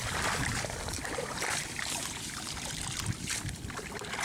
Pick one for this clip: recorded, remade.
remade